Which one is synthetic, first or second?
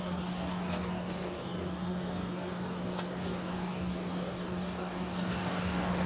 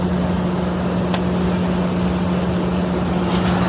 first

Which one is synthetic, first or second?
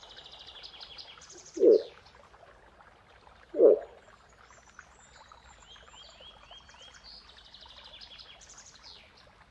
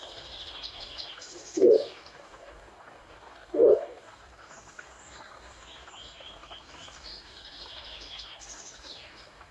second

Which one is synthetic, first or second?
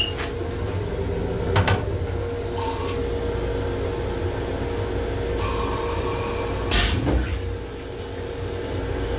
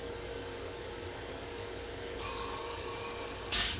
second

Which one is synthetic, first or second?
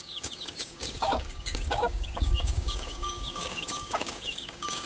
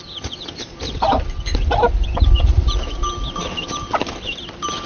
first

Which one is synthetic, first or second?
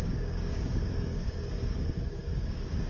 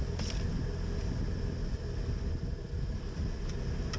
first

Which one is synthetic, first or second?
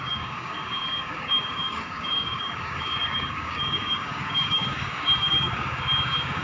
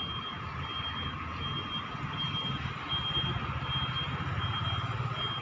first